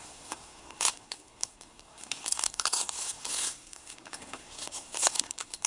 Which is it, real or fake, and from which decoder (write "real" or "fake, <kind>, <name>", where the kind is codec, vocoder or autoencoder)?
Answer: fake, codec, SNAC